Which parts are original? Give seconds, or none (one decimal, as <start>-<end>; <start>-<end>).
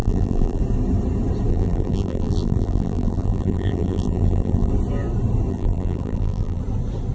0.6-1.5; 4.7-5.5; 6.6-7.1